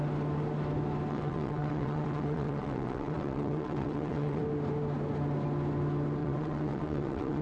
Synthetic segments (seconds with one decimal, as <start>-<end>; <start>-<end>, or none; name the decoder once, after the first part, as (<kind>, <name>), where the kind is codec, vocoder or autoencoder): 1.1-4.4 (vocoder, WaveNeXt); 6.2-7.4